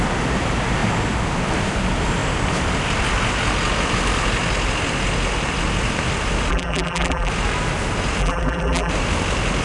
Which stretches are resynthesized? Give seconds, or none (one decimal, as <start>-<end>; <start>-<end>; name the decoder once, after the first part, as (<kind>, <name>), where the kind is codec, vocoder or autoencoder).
6.5-7.3 (vocoder, BigVGAN v2); 8.2-8.9